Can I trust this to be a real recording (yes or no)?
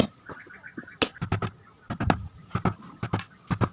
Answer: yes